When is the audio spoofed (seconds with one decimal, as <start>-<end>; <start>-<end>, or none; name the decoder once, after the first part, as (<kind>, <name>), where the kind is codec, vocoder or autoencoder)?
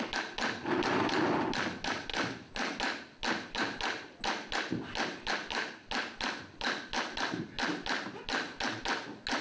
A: none